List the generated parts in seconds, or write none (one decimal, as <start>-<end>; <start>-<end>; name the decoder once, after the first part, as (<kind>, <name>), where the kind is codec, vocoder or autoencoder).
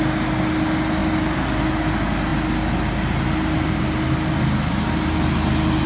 none